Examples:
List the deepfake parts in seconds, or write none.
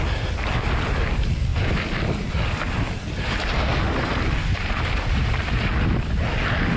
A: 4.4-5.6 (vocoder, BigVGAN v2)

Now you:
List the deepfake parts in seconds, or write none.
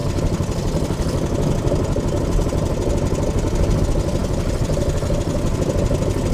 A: none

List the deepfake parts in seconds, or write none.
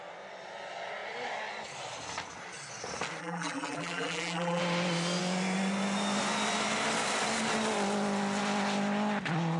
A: 3.2-4.6 (vocoder, BigVGAN v2)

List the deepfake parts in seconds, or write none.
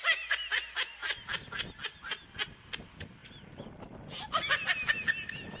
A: none